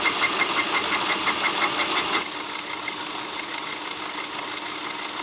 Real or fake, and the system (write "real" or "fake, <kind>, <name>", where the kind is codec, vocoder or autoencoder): real